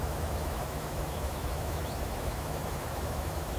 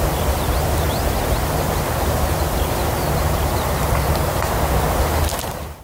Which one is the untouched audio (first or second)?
second